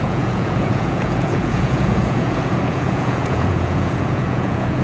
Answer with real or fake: fake